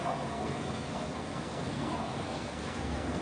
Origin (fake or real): fake